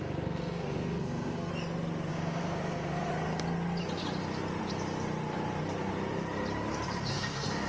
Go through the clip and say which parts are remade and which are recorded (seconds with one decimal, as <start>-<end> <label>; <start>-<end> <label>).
0.0-1.5 remade; 1.5-2.1 recorded; 2.1-3.1 remade; 3.1-7.1 recorded; 7.1-7.7 remade